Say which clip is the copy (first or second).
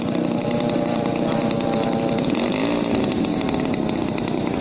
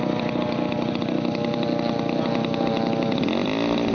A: first